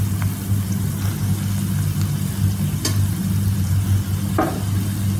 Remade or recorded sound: recorded